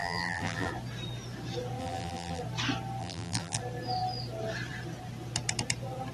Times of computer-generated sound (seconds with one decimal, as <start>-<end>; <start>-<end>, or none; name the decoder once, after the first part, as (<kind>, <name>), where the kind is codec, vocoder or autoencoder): 0.0-0.7 (vocoder, BigVGAN v2); 1.8-2.4; 3.0-3.6